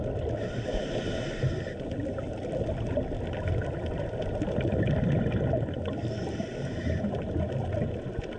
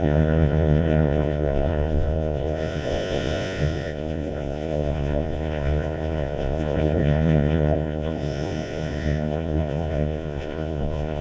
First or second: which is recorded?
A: first